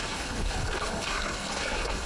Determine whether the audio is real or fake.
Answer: fake